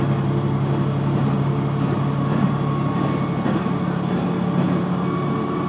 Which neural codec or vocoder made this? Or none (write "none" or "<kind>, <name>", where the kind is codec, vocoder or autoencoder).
none